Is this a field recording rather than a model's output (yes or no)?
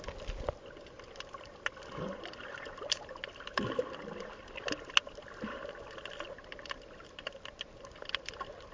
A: yes